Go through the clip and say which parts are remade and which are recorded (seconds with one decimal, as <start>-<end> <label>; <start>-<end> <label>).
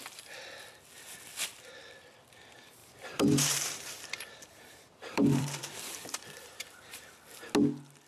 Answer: 0.0-2.8 recorded; 2.8-7.1 remade; 7.1-8.1 recorded